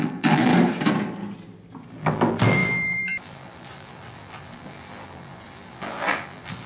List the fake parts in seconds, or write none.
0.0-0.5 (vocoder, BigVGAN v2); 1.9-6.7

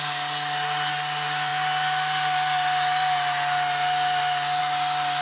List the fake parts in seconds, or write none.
none

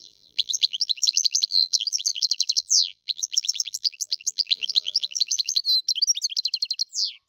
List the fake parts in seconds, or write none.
0.0-5.6 (vocoder, BigVGAN v2)

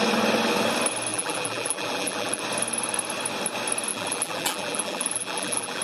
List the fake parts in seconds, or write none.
1.1-2.4 (vocoder, BigVGAN v2); 3.9-5.8

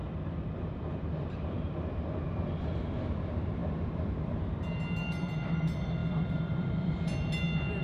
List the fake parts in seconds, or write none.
0.0-2.6 (vocoder, BigVGAN v2); 3.6-4.2; 6.0-6.9

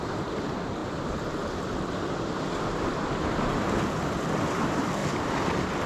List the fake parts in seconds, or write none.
0.0-5.0 (vocoder, BigVGAN v2)

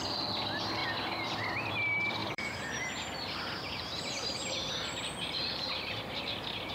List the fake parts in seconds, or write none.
2.2-5.9 (vocoder, BigVGAN v2)